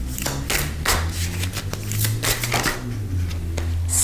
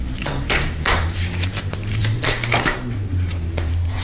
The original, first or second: first